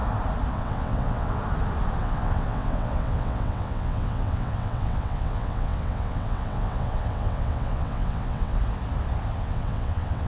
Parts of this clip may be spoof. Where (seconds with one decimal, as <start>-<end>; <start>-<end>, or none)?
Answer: 0.5-1.4; 2.0-8.6; 9.4-10.3